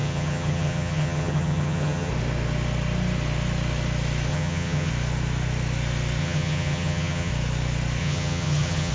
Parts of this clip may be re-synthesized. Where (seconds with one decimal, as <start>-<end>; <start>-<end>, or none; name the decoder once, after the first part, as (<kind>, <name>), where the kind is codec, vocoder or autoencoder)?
0.0-2.1 (vocoder, HiFi-GAN); 4.3-4.9; 6.2-7.3; 8.0-8.9